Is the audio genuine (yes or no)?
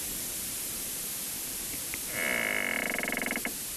yes